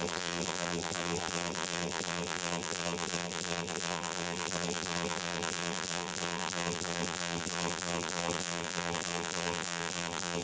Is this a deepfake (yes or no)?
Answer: yes